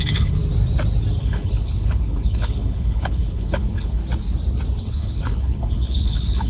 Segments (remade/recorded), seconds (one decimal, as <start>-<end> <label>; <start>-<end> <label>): 0.0-0.4 remade; 0.4-1.2 recorded; 1.2-4.0 remade; 4.0-4.8 recorded; 4.8-6.5 remade